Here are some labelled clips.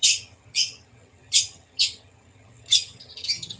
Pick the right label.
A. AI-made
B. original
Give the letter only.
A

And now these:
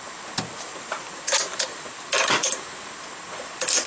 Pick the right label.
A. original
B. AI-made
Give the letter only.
A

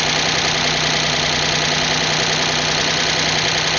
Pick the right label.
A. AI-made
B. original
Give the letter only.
B